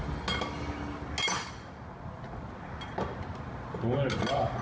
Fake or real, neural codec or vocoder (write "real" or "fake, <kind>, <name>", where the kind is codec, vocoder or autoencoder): real